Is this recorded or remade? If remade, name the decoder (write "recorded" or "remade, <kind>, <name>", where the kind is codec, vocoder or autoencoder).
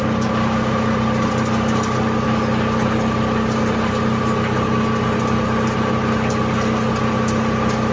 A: recorded